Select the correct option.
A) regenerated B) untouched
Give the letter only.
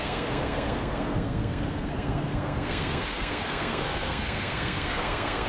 A